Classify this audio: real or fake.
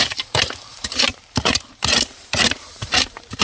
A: fake